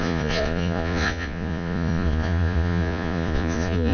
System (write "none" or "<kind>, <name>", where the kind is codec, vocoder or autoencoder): vocoder, Vocos